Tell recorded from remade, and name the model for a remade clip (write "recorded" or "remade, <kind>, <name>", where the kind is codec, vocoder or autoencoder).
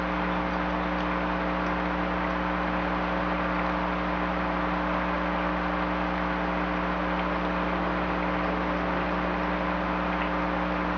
recorded